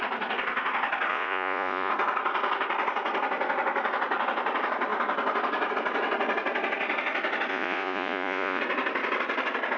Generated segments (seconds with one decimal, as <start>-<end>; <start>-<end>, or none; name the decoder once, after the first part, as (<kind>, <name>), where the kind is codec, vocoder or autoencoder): 1.1-1.9 (vocoder, Vocos); 7.5-8.6